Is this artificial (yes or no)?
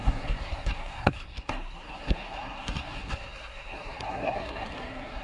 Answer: yes